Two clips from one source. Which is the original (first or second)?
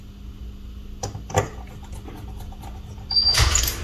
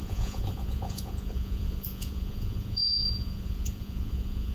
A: first